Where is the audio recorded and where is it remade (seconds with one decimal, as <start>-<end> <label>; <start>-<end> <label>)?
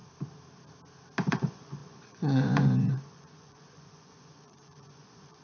0.0-1.3 recorded; 1.3-5.4 remade